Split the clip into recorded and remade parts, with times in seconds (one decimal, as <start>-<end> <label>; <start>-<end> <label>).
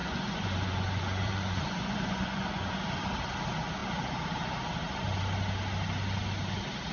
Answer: 0.0-2.7 remade; 2.7-6.9 recorded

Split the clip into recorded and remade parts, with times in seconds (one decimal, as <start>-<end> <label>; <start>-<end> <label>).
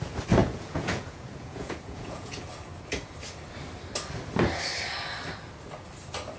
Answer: 0.0-0.4 recorded; 0.4-2.4 remade; 2.4-6.4 recorded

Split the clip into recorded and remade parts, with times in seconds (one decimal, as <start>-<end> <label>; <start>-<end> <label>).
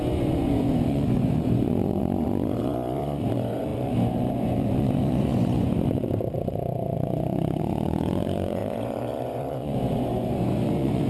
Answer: 0.0-11.1 remade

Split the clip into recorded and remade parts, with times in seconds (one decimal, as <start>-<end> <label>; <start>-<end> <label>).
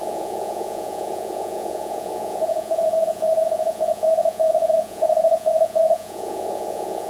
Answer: 0.0-7.1 remade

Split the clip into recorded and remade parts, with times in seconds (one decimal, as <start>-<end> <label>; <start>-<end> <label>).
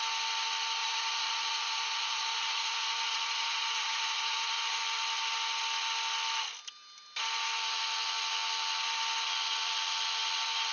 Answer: 0.0-0.8 recorded; 0.8-4.8 remade; 4.8-10.7 recorded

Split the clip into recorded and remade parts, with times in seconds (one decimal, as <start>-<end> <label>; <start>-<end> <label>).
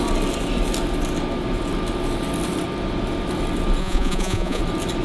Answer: 0.0-3.8 recorded; 3.8-4.6 remade; 4.6-5.0 recorded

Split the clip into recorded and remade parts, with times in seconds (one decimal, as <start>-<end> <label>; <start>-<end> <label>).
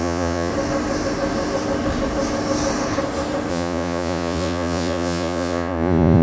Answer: 0.0-0.5 remade; 0.5-3.5 recorded; 3.5-6.2 remade